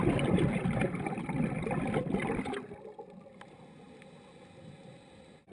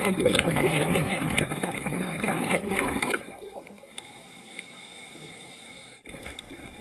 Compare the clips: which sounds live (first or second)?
first